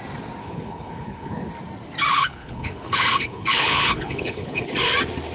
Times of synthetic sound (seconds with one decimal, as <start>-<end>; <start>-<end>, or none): 0.4-1.5; 2.1-4.7